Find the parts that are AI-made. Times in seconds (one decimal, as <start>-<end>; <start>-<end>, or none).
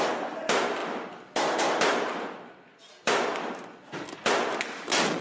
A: none